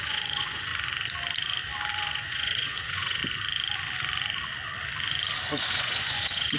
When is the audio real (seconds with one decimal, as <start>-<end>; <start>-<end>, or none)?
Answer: 0.7-1.9; 3.2-5.6